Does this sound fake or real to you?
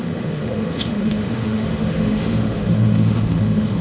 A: fake